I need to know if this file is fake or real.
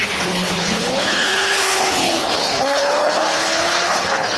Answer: fake